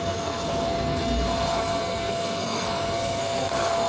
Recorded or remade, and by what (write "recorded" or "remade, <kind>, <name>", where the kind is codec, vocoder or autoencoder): remade, codec, SNAC